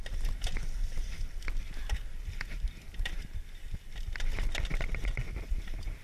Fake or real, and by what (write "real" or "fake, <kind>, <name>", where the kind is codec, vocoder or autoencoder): real